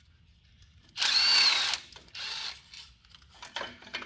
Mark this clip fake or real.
real